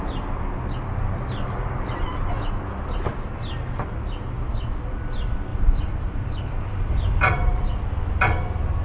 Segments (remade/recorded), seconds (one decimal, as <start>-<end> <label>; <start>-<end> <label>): 0.0-5.5 recorded; 5.5-7.8 remade; 7.8-8.8 recorded